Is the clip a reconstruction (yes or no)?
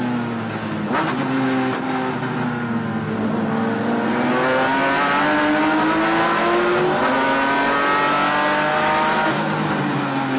no